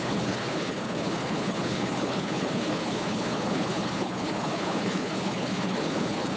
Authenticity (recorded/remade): remade